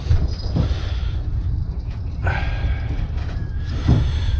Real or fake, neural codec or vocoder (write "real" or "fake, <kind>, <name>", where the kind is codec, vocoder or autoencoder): real